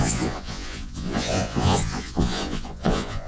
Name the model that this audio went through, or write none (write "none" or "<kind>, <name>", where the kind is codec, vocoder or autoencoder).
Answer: vocoder, Vocos